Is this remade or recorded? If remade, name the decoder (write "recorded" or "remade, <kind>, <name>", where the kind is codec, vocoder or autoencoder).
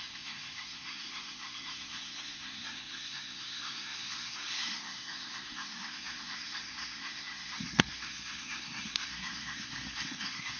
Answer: remade, codec, SNAC